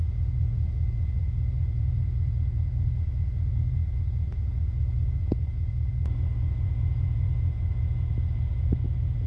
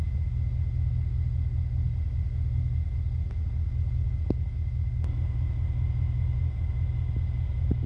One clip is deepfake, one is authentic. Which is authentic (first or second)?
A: second